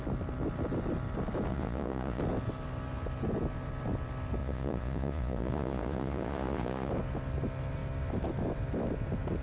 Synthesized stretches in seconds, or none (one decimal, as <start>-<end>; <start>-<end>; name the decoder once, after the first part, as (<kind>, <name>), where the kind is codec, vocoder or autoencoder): 1.5-2.2 (vocoder, Vocos); 4.4-6.9